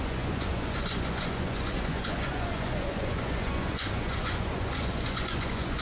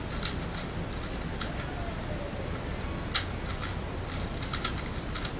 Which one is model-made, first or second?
first